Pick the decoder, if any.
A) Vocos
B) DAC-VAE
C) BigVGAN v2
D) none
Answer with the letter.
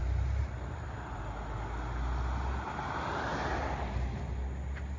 D